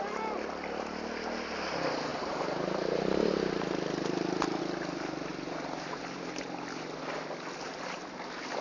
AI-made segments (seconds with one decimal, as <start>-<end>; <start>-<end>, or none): 2.1-4.6; 5.3-6.8